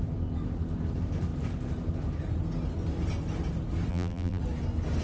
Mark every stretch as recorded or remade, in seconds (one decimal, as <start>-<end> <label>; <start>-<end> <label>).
0.0-3.9 recorded; 3.9-4.4 remade; 4.4-5.0 recorded